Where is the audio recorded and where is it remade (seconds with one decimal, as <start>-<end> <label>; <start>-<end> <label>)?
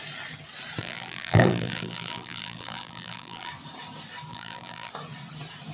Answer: 0.0-0.8 recorded; 0.8-3.5 remade; 3.5-4.3 recorded; 4.3-4.9 remade; 4.9-5.7 recorded